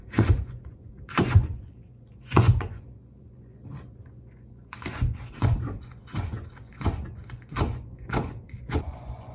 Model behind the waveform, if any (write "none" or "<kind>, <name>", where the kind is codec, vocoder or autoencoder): vocoder, Vocos